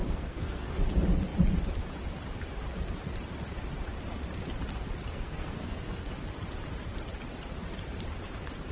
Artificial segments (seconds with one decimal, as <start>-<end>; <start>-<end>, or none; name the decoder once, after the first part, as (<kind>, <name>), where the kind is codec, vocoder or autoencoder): 0.0-0.8 (codec, SNAC); 5.1-6.1